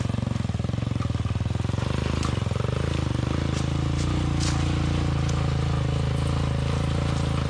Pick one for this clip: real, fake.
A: real